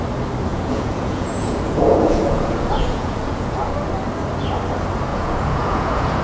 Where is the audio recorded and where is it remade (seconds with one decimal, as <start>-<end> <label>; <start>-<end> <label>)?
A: 0.0-0.5 recorded; 0.5-3.7 remade; 3.7-5.1 recorded; 5.1-6.2 remade